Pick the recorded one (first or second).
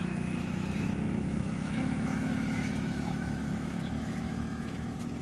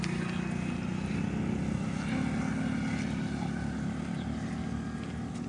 second